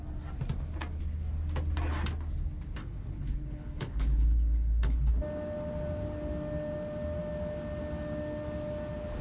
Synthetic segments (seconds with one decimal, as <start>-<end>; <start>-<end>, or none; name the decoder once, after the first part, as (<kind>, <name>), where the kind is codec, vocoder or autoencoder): 2.8-5.1 (codec, HILCodec)

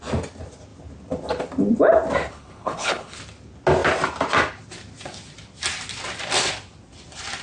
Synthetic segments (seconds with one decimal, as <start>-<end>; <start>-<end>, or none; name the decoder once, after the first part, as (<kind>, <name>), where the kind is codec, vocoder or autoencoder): 2.3-3.2 (codec, HILCodec)

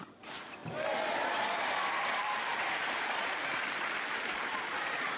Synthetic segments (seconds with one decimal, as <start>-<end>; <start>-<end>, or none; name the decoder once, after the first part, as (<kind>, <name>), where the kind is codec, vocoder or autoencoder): 0.0-0.6 (vocoder, BigVGAN v2); 1.7-5.2

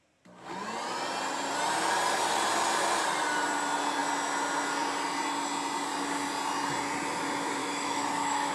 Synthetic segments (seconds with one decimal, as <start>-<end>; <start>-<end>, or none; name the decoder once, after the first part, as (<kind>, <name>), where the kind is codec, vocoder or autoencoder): 7.6-8.5 (autoencoder, DAC-VAE)